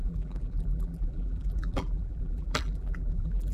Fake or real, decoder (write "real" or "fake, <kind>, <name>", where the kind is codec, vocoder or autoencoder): fake, vocoder, BigVGAN v2